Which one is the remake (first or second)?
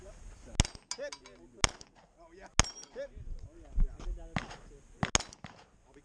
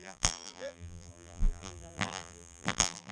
second